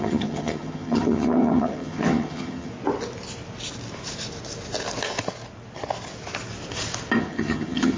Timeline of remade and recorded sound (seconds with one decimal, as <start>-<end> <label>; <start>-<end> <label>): 0.0-2.7 remade; 2.7-7.2 recorded; 7.2-8.0 remade